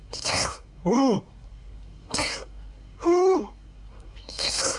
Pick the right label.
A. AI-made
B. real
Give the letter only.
A